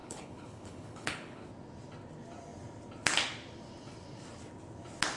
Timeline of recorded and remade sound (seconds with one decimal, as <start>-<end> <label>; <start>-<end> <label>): 0.0-1.5 remade; 1.5-5.2 recorded